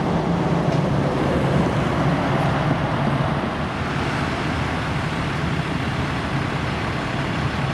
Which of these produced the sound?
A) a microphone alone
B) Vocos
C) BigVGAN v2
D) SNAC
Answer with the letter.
A